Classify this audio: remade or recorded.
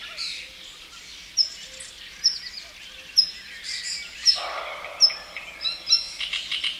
recorded